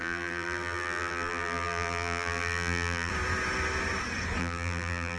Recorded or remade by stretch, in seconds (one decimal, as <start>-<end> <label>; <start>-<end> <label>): 0.0-3.1 remade; 3.1-4.4 recorded; 4.4-5.2 remade